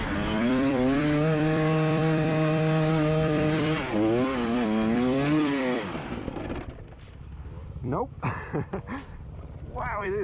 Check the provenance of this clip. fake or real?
fake